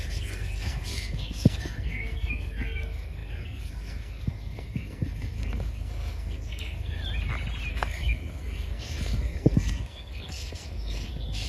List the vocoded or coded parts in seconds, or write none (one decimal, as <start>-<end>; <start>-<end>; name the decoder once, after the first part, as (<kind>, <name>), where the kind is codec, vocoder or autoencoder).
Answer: 0.0-7.0 (codec, SNAC); 7.7-11.5